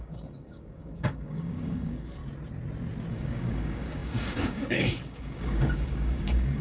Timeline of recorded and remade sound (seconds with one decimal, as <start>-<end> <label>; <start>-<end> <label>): 0.0-2.2 remade; 2.2-3.1 recorded; 3.1-6.6 remade

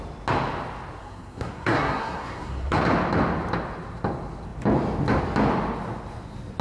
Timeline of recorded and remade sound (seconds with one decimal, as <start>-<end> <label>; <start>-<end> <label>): 0.0-1.0 recorded; 1.0-2.8 remade; 2.8-6.6 recorded

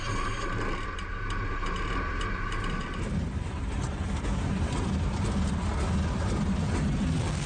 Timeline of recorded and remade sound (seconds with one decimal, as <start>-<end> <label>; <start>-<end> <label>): 0.0-2.8 recorded; 2.8-5.7 remade; 5.7-7.5 recorded

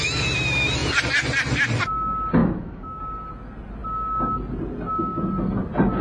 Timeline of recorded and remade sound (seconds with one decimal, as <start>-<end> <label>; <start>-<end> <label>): 0.0-2.4 recorded; 2.4-3.0 remade; 3.0-6.0 recorded